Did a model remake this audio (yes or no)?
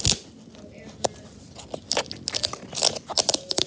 no